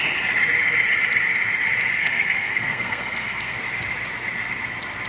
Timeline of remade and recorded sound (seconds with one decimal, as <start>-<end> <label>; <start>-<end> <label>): 0.0-2.0 recorded; 2.0-3.6 remade; 3.6-5.1 recorded